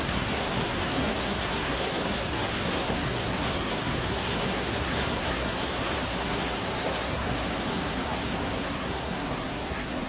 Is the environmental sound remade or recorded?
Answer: remade